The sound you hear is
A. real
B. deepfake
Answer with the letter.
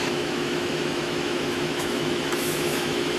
B